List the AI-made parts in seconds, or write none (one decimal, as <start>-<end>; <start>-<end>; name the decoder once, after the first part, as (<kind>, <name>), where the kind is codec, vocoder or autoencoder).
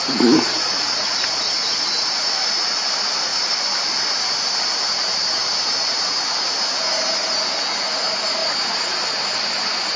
none